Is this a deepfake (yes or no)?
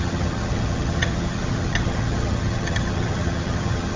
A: yes